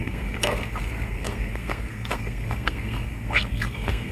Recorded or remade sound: remade